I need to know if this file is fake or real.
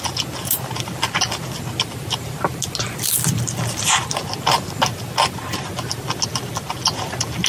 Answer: real